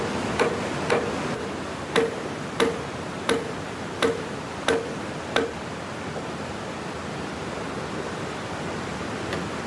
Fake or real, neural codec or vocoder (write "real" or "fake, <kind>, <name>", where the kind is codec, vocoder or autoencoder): real